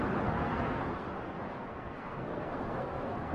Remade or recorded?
remade